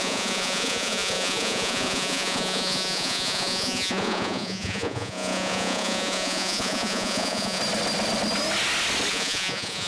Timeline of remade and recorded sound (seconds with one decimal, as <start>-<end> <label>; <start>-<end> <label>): 0.0-7.6 remade; 7.6-9.1 recorded; 9.1-9.9 remade